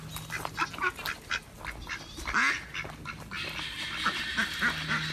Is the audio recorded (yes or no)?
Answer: yes